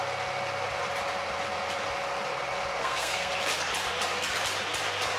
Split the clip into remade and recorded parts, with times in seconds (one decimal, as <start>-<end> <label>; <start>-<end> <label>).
0.0-2.8 recorded; 2.8-3.3 remade; 3.3-5.2 recorded